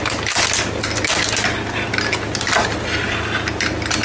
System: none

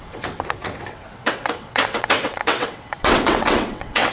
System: vocoder, WaveNeXt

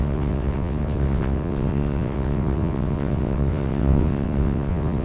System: vocoder, WaveNeXt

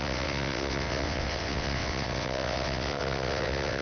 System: vocoder, WaveNeXt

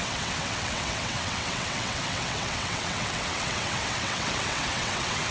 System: vocoder, WaveNeXt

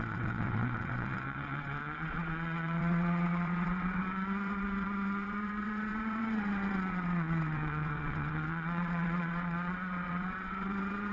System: vocoder, WaveNeXt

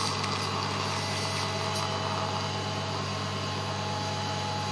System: none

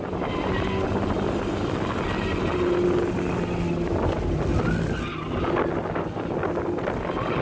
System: none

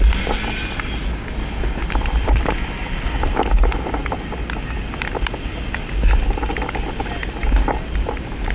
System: none